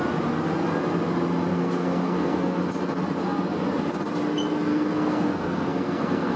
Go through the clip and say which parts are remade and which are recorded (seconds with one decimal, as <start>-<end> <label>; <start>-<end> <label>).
0.0-1.5 recorded; 1.5-2.6 remade; 2.6-4.7 recorded; 4.7-6.4 remade